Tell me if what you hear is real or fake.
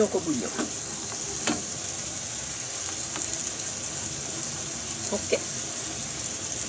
real